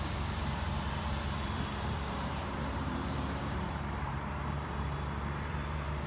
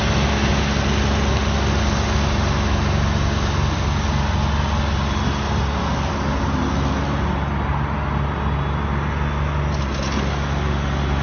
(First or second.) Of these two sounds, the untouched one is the second